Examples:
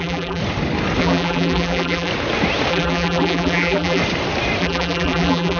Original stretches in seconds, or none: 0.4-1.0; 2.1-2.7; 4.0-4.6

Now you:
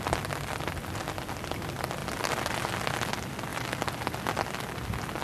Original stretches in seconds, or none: 0.0-5.2

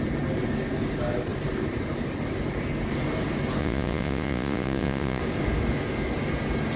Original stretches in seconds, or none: 0.0-3.6; 5.2-6.8

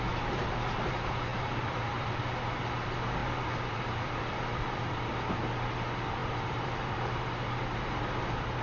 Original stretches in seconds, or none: 0.0-1.3; 2.2-3.2; 4.9-6.2; 8.1-8.6

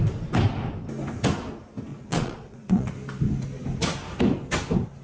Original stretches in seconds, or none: 0.0-1.9; 2.9-5.0